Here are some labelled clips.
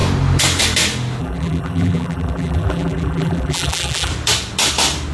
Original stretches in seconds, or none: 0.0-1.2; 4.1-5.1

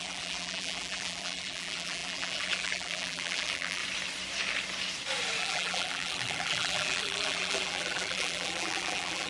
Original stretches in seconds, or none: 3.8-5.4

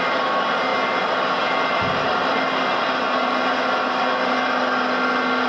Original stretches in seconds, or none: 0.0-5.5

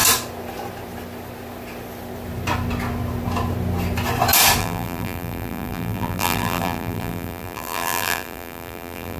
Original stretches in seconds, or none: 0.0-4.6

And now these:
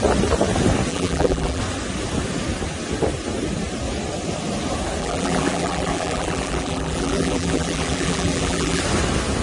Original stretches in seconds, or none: 0.0-0.9; 1.6-5.0; 8.8-9.4

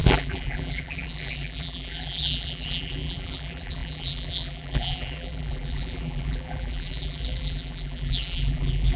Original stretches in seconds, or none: none